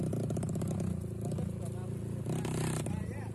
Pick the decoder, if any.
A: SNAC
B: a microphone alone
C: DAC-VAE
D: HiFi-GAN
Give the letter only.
B